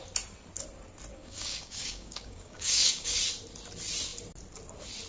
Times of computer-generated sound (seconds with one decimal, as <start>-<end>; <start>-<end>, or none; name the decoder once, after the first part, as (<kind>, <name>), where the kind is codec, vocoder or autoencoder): 1.1-3.2 (codec, DAC)